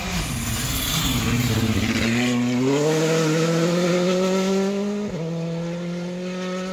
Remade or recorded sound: recorded